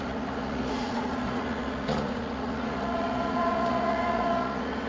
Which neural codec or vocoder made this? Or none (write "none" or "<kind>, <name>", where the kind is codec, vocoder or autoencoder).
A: vocoder, Vocos